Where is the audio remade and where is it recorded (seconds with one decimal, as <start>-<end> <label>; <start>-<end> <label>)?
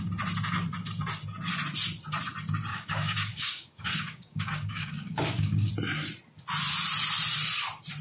0.0-2.7 recorded; 2.7-5.7 remade; 5.7-8.0 recorded